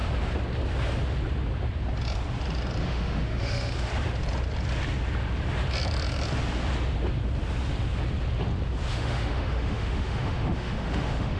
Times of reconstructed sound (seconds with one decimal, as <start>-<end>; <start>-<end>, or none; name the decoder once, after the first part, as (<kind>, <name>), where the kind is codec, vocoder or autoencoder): 2.8-3.9 (autoencoder, DAC-VAE); 8.9-11.4